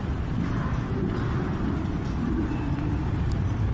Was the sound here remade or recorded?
recorded